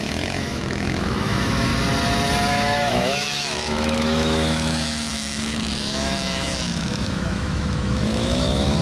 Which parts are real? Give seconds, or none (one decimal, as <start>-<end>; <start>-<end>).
1.7-2.5